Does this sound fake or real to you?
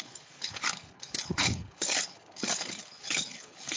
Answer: fake